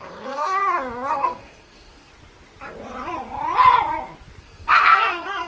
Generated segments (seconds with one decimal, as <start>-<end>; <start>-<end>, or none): 0.0-0.6; 1.1-2.1; 4.4-5.5